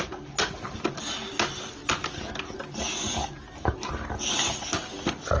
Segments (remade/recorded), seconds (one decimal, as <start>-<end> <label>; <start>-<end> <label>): 0.0-5.4 recorded

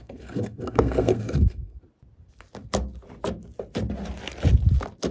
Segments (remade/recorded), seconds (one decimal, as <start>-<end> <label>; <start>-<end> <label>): 0.0-1.8 remade; 1.8-5.1 recorded

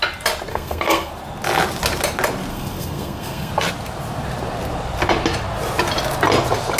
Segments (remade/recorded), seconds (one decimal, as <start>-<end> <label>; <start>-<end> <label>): 0.0-0.5 recorded; 0.5-1.1 remade; 1.1-2.5 recorded; 2.5-3.5 remade; 3.5-6.8 recorded

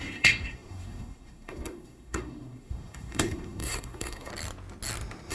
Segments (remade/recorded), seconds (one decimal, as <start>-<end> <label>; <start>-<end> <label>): 0.0-4.3 remade; 4.3-5.3 recorded

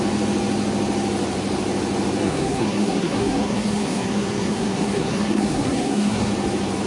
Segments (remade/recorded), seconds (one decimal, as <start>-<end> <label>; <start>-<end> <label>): 0.0-2.2 recorded; 2.2-6.3 remade; 6.3-6.9 recorded

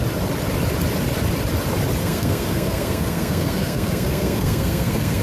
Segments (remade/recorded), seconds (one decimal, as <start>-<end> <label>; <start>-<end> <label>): 0.0-2.0 recorded; 2.0-5.2 remade

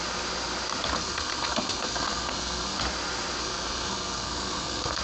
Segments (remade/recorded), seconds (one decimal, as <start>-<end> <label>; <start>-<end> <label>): 0.0-1.0 recorded; 1.0-2.8 remade; 2.8-3.4 recorded; 3.4-5.0 remade